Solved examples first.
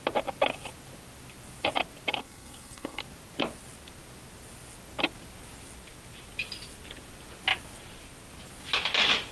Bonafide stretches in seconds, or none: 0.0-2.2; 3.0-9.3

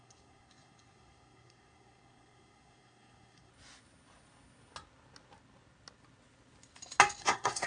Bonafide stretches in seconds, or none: 3.5-7.2

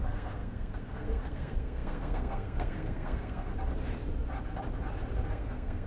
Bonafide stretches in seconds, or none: 3.5-5.3

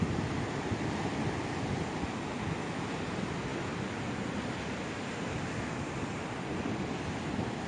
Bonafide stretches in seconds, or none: 0.0-7.7

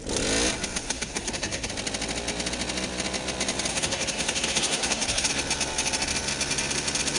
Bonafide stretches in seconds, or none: 0.0-0.8; 1.7-3.7; 5.3-7.2